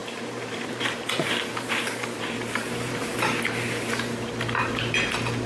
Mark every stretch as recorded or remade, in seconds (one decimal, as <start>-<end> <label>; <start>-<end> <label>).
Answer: 0.0-3.3 remade; 3.3-5.5 recorded